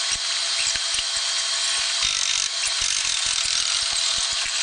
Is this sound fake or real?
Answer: real